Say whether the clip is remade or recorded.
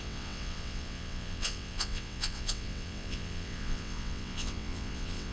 remade